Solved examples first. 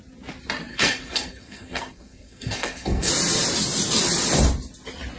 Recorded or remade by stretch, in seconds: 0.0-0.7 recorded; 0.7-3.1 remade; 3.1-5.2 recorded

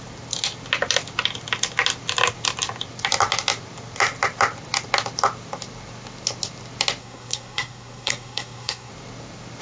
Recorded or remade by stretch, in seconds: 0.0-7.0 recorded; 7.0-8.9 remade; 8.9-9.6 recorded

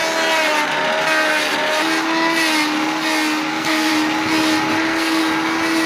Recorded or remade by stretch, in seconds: 0.0-3.5 recorded; 3.5-3.9 remade; 3.9-4.7 recorded; 4.7-5.2 remade; 5.2-5.9 recorded

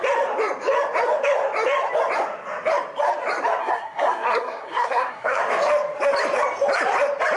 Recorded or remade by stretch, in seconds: 0.0-3.6 recorded; 3.6-5.4 remade; 5.4-7.4 recorded